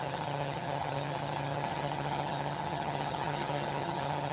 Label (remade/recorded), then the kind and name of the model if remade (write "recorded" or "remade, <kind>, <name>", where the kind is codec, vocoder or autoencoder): remade, vocoder, HiFi-GAN